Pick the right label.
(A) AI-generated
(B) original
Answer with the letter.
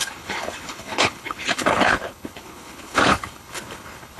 A